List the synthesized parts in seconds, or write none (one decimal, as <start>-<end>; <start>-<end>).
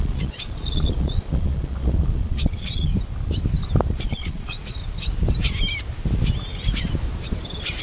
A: 0.0-2.9; 3.9-4.8